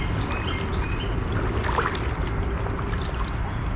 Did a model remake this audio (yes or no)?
no